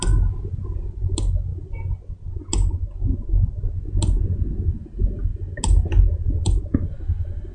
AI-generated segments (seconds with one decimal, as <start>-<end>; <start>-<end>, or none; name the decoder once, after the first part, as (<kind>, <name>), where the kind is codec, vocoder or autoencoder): none